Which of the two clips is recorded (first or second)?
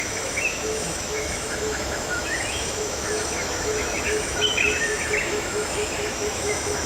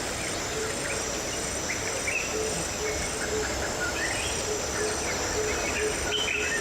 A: second